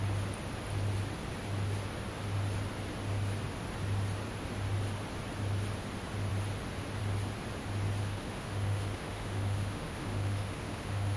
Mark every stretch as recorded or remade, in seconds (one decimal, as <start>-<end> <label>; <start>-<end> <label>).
0.0-8.0 recorded; 8.0-11.2 remade